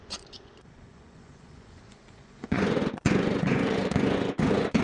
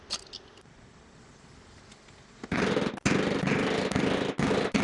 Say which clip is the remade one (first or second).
first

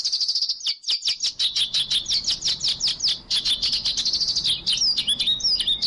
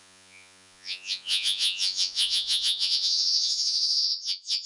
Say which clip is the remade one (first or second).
second